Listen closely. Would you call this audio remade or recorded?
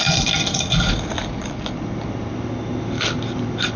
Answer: recorded